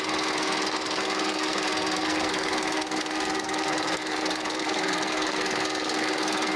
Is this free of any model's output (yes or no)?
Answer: no